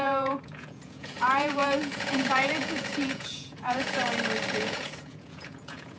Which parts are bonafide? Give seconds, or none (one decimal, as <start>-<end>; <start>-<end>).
4.0-4.5